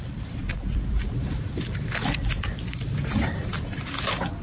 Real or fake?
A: fake